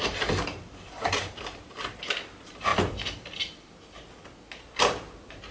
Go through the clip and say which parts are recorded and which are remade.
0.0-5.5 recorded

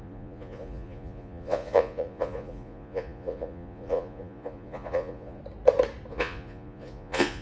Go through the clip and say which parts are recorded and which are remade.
0.0-5.4 remade; 5.4-6.1 recorded; 6.1-7.4 remade

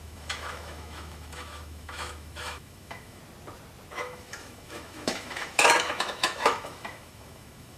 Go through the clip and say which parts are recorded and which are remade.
0.0-3.2 remade; 3.2-3.9 recorded; 3.9-7.8 remade

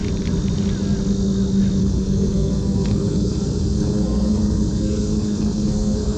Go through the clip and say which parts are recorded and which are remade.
0.0-1.8 recorded; 1.8-6.2 remade

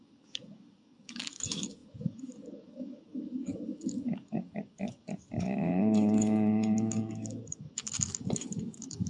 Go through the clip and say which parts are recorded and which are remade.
0.0-9.1 remade